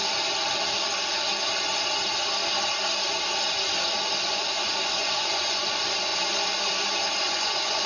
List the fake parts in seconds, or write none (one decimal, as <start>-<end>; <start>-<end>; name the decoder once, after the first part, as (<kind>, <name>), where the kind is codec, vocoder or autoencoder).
4.2-6.1 (vocoder, Vocos); 7.2-7.9